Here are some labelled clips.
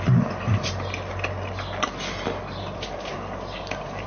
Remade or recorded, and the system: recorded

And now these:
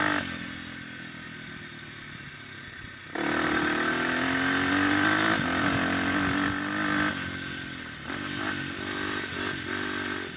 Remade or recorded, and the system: recorded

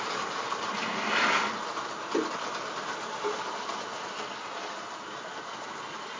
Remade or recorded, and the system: recorded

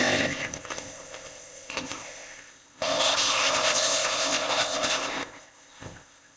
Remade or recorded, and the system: remade, codec, ZipCodec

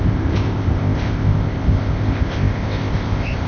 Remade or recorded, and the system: remade, codec, ZipCodec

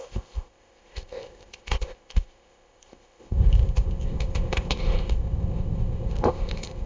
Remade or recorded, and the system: remade, codec, ZipCodec